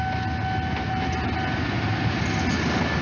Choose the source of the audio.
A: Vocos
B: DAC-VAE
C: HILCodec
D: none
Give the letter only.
D